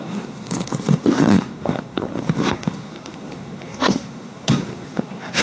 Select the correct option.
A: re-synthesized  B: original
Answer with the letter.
A